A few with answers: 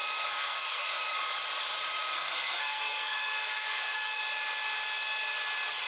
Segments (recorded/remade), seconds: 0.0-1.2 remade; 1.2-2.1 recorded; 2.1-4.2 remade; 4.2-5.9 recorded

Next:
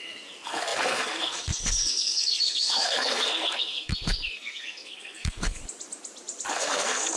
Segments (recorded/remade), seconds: 0.0-5.6 remade; 5.6-6.5 recorded; 6.5-7.2 remade